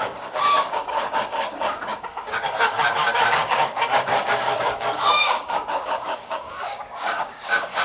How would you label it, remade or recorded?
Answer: remade